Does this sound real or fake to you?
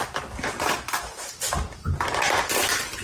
real